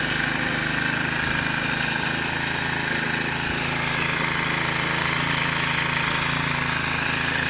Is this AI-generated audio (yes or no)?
no